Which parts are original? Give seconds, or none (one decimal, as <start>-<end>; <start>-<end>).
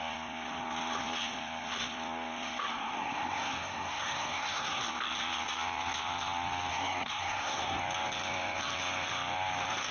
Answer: 0.0-2.7; 4.8-6.7; 7.8-9.9